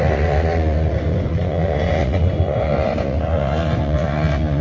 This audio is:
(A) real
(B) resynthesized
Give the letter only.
B